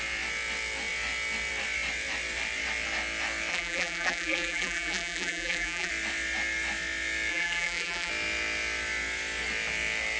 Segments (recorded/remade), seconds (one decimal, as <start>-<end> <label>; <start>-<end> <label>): 0.0-3.5 recorded; 3.5-5.9 remade; 5.9-7.3 recorded; 7.3-8.1 remade; 8.1-10.2 recorded